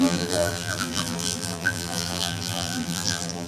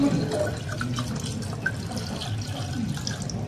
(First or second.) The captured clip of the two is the second